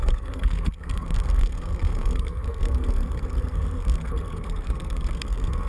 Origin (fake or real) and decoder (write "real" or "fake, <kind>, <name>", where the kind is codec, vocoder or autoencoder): fake, codec, SNAC